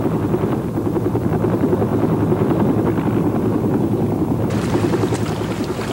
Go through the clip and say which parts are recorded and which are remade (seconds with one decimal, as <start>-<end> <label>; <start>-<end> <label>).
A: 0.0-1.9 remade; 1.9-4.7 recorded; 4.7-5.9 remade